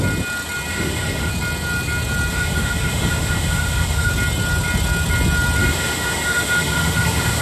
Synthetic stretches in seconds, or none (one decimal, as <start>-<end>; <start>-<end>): 0.7-1.3; 2.3-4.1; 5.6-7.4